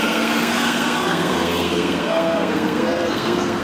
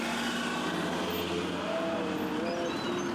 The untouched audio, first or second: second